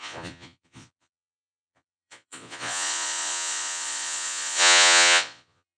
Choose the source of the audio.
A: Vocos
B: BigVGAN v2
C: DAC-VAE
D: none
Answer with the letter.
A